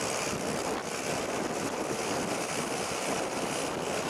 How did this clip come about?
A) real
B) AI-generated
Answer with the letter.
A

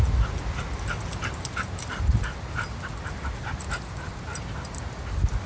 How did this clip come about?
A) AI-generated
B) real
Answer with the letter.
B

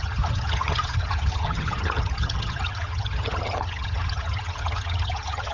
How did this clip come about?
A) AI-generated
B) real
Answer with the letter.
A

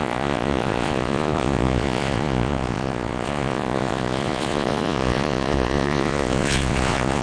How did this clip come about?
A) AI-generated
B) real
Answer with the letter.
A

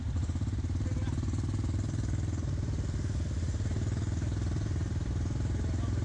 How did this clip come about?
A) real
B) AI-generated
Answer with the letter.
A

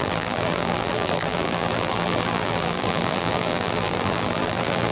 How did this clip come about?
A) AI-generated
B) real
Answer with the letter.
A